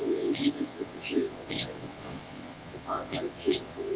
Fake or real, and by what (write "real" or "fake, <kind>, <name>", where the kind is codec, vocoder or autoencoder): fake, vocoder, Vocos